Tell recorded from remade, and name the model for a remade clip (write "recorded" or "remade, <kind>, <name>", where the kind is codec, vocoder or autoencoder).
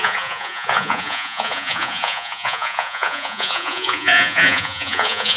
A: remade, vocoder, Vocos